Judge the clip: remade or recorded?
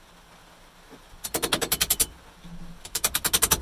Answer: recorded